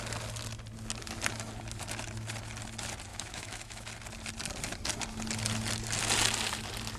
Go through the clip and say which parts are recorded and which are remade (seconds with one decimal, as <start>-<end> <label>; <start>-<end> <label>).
0.0-3.1 recorded; 3.1-3.9 remade; 3.9-7.0 recorded